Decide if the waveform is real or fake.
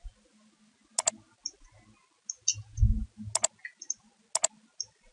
real